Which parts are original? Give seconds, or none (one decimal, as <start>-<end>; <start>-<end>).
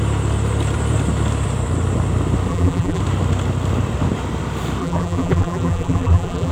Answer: 0.0-2.5; 3.0-4.8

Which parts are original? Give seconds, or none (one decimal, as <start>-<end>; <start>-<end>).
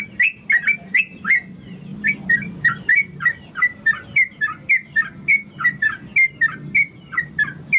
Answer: 0.0-7.8